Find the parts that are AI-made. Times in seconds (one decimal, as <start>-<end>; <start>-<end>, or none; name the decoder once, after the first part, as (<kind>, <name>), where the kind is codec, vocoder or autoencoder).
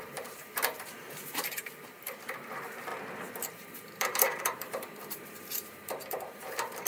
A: 0.0-2.9 (vocoder, BigVGAN v2); 3.5-6.9